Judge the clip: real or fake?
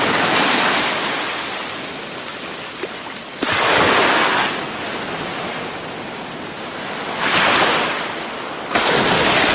real